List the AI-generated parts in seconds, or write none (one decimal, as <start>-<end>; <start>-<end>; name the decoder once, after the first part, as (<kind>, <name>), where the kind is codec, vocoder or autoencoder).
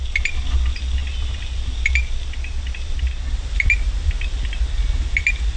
none